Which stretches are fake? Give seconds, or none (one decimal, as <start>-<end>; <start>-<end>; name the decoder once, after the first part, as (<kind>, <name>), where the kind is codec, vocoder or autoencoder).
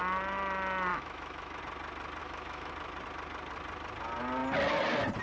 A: 0.9-1.6 (autoencoder, DAC-VAE); 2.2-2.7